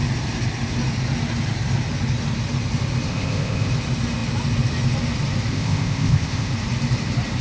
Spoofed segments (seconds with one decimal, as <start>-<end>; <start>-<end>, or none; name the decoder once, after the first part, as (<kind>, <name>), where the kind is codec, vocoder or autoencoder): 3.1-3.7 (codec, ZipCodec); 5.5-6.5